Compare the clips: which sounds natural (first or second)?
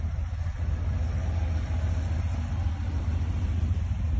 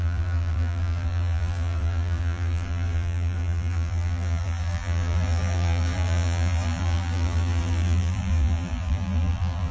first